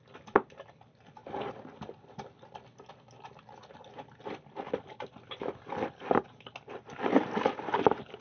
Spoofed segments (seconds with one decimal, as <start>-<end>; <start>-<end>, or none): none